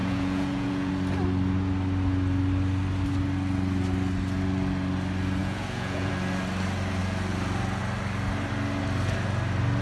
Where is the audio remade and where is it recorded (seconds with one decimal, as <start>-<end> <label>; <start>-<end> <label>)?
0.0-0.9 remade; 0.9-5.4 recorded; 5.4-6.1 remade; 6.1-9.8 recorded